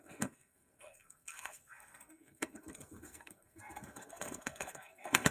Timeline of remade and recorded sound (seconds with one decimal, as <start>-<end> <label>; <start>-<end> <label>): 0.0-5.3 remade